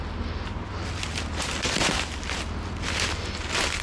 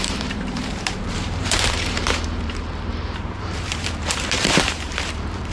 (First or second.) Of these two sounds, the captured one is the first